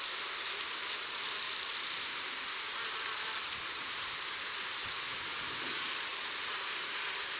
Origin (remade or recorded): recorded